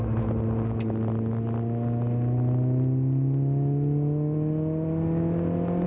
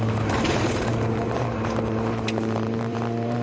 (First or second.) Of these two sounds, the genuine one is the first